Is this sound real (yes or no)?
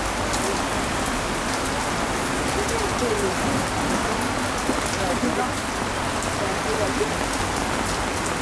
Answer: yes